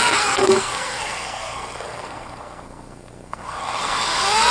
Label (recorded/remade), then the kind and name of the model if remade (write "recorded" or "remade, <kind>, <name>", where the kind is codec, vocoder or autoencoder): remade, codec, SNAC